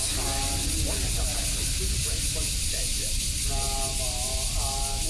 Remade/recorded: recorded